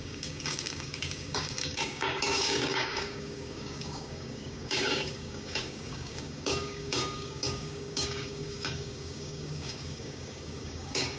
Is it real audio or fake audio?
fake